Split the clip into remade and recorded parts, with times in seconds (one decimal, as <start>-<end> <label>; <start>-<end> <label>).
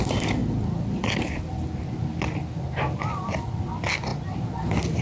0.0-5.0 recorded